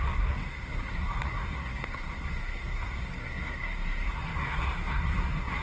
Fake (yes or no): yes